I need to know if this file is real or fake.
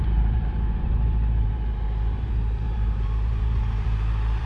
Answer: fake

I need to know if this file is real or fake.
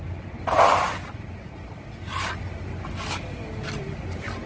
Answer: real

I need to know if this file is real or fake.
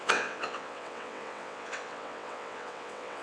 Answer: fake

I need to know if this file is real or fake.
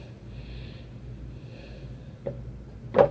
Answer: real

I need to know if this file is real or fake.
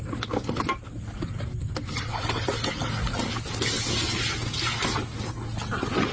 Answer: real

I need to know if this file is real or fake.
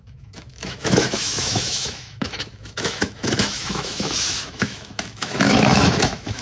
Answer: fake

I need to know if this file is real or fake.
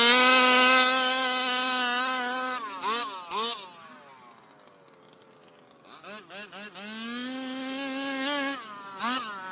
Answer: real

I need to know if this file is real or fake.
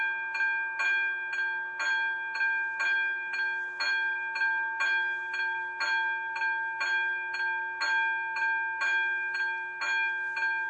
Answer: real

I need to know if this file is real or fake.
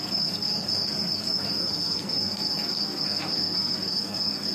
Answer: fake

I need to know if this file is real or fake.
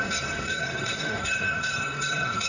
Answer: fake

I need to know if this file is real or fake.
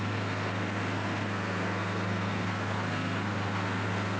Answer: fake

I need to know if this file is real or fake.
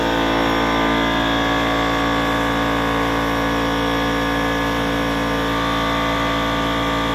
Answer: real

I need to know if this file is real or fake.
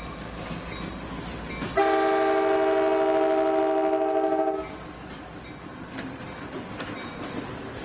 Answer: real